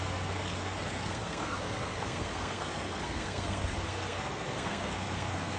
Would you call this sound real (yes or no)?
no